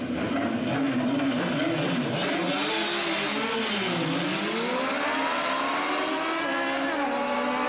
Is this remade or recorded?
recorded